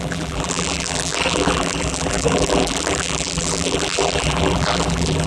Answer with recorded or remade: remade